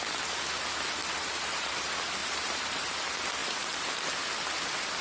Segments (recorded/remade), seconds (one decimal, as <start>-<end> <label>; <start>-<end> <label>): 0.0-1.0 recorded; 1.0-1.7 remade; 1.7-2.2 recorded; 2.2-2.9 remade; 2.9-3.4 recorded; 3.4-3.9 remade; 3.9-5.0 recorded